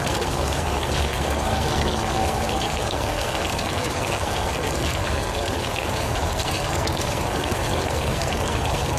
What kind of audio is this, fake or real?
fake